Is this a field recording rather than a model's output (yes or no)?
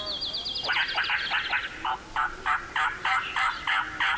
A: yes